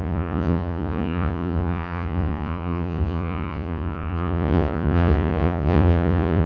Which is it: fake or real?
fake